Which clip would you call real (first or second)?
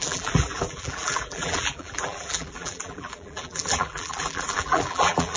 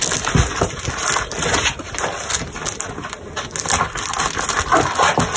second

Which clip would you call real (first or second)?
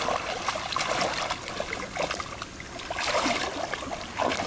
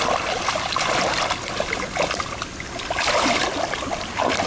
first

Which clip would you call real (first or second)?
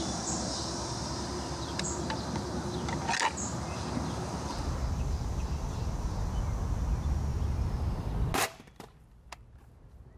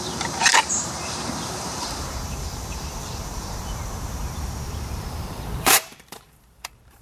first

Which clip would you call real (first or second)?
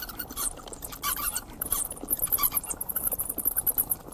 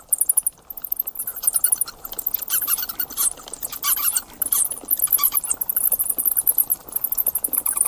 second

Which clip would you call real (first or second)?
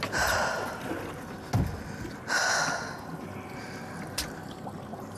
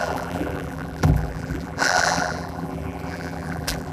first